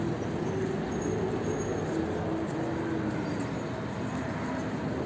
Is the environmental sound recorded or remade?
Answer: recorded